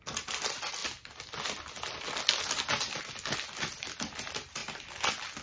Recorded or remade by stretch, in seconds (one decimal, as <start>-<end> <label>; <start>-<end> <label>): 0.0-5.4 recorded